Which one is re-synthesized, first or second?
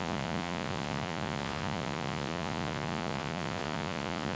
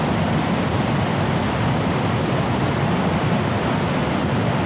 first